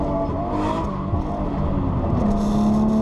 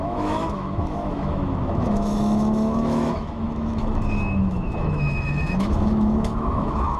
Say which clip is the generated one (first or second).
second